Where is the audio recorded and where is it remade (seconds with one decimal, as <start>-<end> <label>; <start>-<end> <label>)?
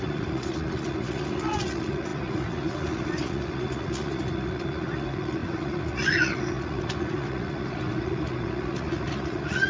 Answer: 0.0-9.7 remade